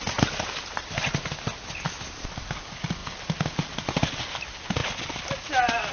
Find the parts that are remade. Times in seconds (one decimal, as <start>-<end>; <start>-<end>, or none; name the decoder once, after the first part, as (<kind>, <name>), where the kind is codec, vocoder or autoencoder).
none